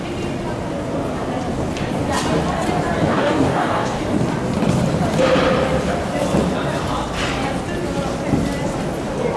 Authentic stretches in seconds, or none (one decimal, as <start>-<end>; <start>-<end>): 0.0-3.1; 4.0-9.4